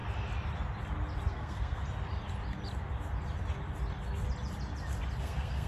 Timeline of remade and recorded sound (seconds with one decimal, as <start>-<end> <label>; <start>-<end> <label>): 0.0-1.3 recorded; 1.3-1.8 remade; 1.8-5.2 recorded; 5.2-5.7 remade